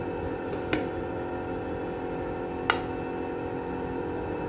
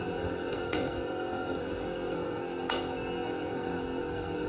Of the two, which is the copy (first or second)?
second